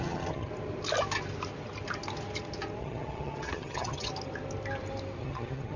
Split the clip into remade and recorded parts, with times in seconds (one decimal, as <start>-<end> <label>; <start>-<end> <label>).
0.0-0.5 remade; 0.5-2.8 recorded; 2.8-4.1 remade; 4.1-5.2 recorded; 5.2-5.8 remade